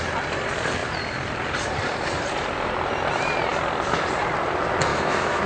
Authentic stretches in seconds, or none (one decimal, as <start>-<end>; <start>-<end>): 0.0-4.9